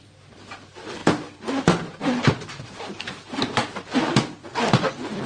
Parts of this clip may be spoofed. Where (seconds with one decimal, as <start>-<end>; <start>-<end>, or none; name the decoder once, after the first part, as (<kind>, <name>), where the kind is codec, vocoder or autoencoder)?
none